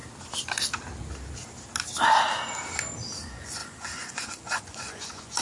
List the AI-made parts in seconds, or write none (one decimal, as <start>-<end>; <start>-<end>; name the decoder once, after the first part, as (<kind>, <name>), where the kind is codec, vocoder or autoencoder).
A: 3.2-5.4 (vocoder, Vocos)